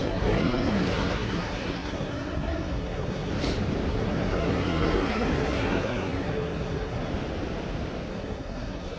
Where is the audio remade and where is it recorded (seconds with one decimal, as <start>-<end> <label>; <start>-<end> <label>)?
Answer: 0.0-3.3 remade; 3.3-3.9 recorded; 3.9-7.1 remade; 7.1-8.1 recorded; 8.1-9.0 remade